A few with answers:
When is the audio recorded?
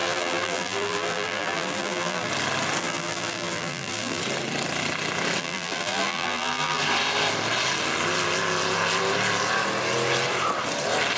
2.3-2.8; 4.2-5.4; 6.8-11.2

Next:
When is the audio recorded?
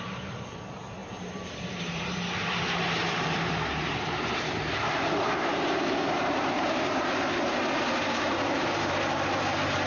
none